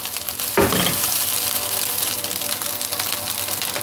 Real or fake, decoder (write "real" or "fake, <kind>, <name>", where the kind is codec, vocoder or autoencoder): real